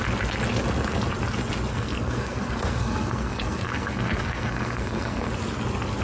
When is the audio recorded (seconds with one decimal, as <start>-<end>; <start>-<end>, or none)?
0.0-1.7; 5.3-6.0